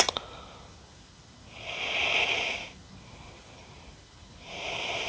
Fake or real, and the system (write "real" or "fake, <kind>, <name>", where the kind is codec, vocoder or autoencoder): real